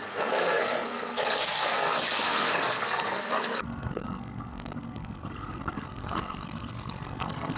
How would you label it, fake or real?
fake